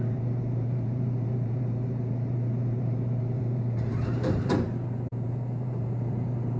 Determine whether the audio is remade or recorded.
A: remade